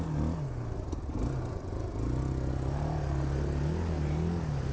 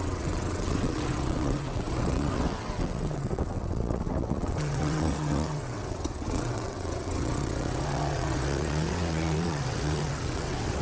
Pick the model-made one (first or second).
second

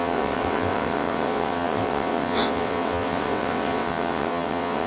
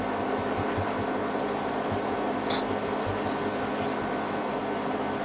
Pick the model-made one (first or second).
first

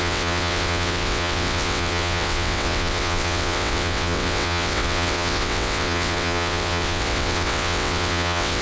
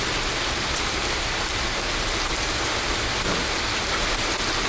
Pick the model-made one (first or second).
first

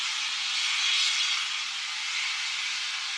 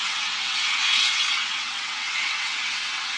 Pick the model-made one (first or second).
second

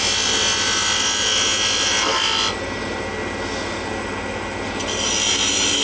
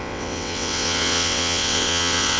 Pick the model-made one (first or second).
second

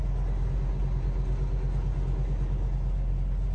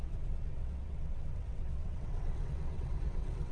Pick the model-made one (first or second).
second